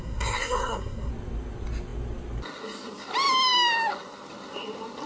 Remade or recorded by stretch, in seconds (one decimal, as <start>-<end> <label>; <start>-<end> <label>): 0.0-1.1 remade; 1.1-5.1 recorded